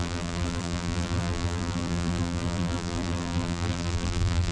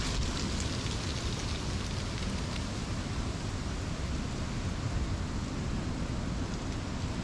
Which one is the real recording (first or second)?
second